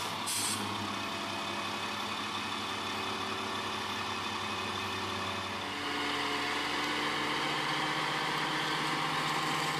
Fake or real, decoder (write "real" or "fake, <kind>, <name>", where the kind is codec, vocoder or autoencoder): real